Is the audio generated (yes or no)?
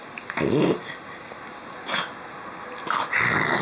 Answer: no